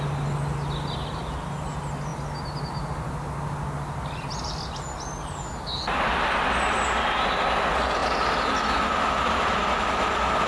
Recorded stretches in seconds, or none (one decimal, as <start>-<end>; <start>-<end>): 0.0-10.5